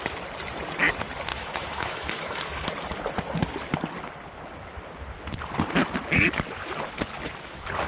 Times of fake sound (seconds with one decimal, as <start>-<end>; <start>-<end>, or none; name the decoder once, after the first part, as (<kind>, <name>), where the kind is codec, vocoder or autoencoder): 1.3-2.7 (autoencoder, DAC-VAE)